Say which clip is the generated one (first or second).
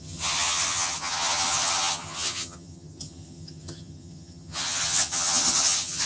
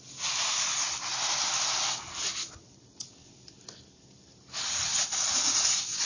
first